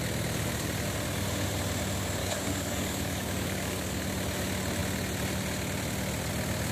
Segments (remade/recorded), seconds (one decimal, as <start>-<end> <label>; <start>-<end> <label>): 0.0-2.2 recorded; 2.2-4.0 remade; 4.0-6.7 recorded